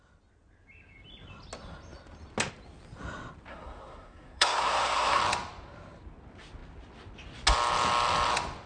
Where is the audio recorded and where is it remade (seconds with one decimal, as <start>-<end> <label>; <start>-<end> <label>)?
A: 0.0-3.5 recorded; 3.5-5.2 remade; 5.2-8.7 recorded